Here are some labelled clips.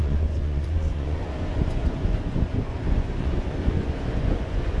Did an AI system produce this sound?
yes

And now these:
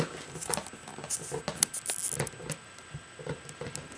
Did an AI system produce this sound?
no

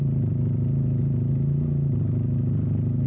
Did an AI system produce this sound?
no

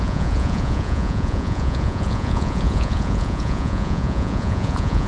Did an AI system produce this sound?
yes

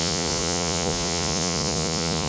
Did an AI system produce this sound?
yes